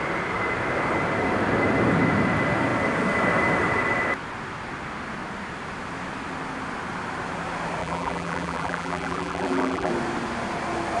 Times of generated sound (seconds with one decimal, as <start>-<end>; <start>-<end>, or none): 7.8-9.9